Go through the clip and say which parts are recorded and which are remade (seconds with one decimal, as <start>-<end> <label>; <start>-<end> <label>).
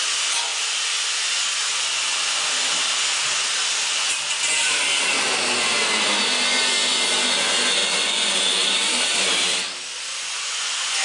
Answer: 0.0-7.8 recorded; 7.8-8.4 remade; 8.4-10.1 recorded; 10.1-11.0 remade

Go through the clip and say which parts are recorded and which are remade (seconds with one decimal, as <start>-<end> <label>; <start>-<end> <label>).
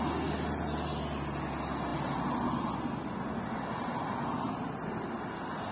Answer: 0.0-5.7 recorded